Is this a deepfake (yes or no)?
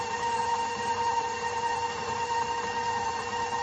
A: no